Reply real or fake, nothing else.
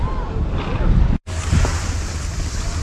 real